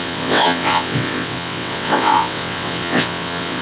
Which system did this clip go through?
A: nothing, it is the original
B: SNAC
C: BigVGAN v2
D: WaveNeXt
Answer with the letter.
D